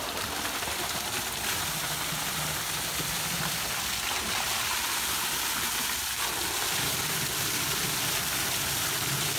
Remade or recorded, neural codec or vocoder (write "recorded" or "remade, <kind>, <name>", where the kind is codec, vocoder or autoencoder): recorded